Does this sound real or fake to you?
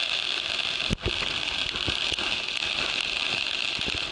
real